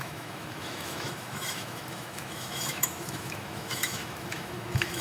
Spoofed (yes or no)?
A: yes